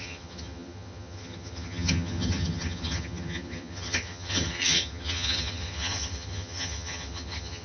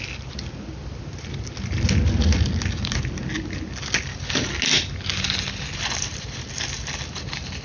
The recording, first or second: second